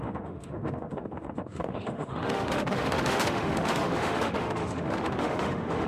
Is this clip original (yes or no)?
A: no